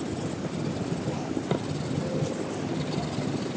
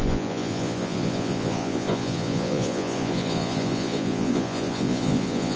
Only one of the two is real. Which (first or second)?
first